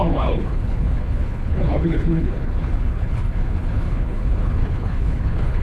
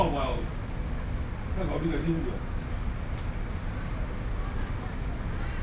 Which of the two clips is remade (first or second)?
first